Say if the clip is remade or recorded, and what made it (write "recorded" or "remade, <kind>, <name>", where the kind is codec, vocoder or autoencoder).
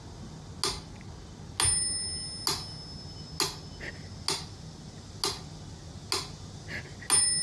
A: recorded